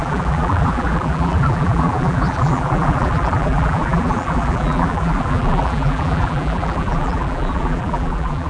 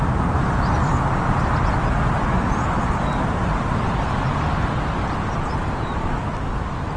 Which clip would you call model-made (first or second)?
first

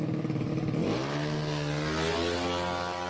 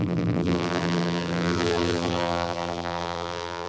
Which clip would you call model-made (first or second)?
second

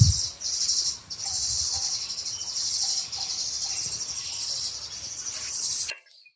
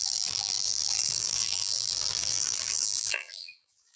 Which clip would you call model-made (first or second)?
second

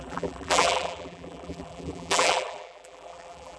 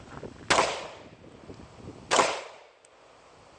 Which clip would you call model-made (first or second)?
first